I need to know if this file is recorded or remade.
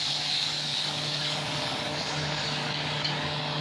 remade